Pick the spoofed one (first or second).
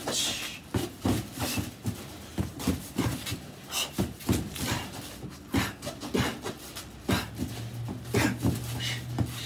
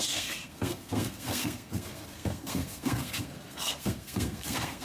second